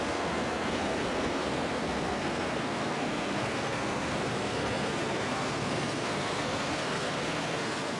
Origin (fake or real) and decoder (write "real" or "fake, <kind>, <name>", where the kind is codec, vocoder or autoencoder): fake, codec, SNAC